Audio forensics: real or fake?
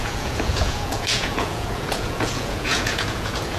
fake